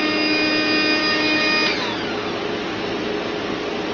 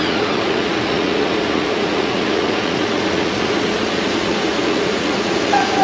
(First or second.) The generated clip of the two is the second